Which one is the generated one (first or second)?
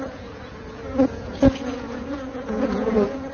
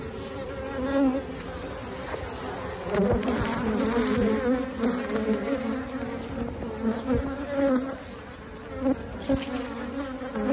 first